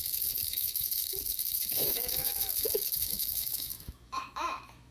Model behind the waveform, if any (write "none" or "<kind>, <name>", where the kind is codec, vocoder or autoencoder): autoencoder, DAC-VAE